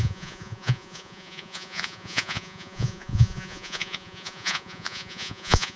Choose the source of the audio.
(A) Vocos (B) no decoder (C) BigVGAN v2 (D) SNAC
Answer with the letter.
A